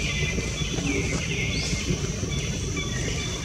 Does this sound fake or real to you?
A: fake